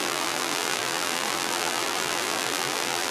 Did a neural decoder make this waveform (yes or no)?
yes